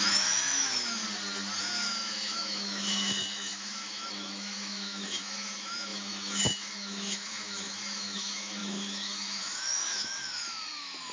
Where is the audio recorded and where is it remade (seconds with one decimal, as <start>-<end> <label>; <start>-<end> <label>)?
0.0-1.0 remade; 1.0-1.6 recorded; 1.6-11.1 remade